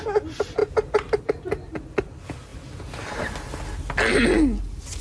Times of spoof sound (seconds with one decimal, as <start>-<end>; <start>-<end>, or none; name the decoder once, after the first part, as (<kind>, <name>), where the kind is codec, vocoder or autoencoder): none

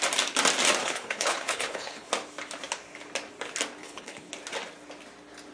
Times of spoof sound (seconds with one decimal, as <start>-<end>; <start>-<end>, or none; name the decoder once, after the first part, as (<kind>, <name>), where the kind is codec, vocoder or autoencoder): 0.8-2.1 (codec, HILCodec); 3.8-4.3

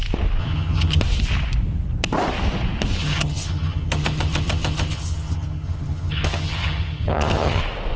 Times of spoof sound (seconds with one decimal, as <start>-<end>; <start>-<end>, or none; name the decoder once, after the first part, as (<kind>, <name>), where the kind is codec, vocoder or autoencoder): 0.4-1.0 (vocoder, HiFi-GAN); 3.0-7.6